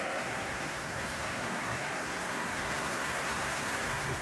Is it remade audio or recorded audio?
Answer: remade